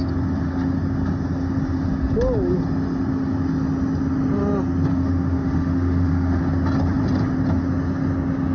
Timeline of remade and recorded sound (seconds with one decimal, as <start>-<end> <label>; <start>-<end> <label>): 0.0-4.9 recorded; 4.9-6.4 remade; 6.4-8.5 recorded